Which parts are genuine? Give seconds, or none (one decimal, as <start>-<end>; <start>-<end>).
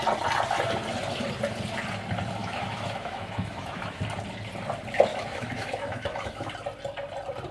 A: 0.0-2.4; 4.0-5.1; 6.5-7.5